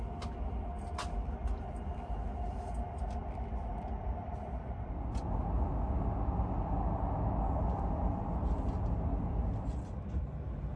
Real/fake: real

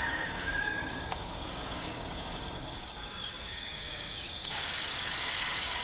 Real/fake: fake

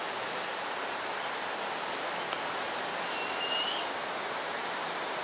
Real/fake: real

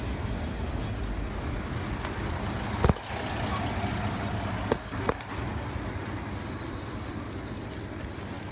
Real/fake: real